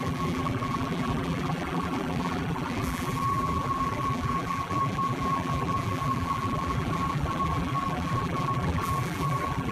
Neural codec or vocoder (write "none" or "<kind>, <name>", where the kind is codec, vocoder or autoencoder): vocoder, BigVGAN v2